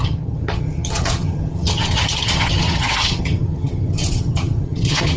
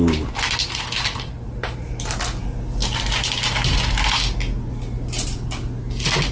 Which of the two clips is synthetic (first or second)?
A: first